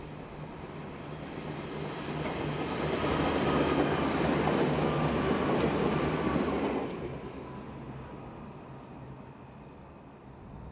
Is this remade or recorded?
recorded